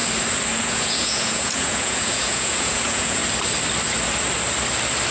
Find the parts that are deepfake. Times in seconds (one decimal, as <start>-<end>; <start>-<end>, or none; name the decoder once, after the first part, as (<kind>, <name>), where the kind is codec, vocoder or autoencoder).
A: 0.6-3.2 (vocoder, Vocos)